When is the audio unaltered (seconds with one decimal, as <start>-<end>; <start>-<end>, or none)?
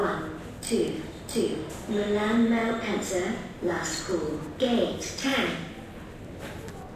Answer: 0.0-7.0